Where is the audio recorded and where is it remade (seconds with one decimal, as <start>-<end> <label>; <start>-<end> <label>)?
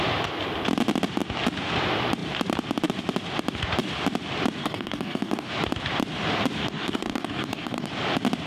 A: 0.0-4.6 recorded; 4.6-5.5 remade; 5.5-6.6 recorded; 6.6-7.9 remade; 7.9-8.5 recorded